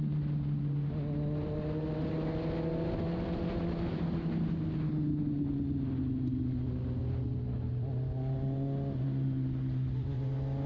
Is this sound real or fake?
real